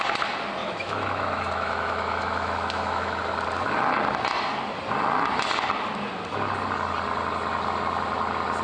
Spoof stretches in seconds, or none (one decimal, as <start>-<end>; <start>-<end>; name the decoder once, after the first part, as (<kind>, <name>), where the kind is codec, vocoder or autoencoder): 0.6-3.2 (autoencoder, DAC-VAE)